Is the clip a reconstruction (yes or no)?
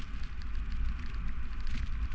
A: no